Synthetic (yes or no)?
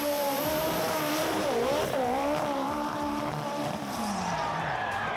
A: yes